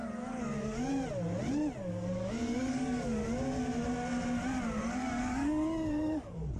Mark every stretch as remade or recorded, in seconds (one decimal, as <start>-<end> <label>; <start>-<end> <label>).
0.0-0.9 remade; 0.9-1.8 recorded; 1.8-3.2 remade; 3.2-4.8 recorded; 4.8-6.6 remade